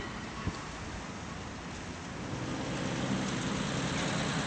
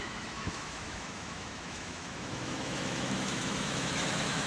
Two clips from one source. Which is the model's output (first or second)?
second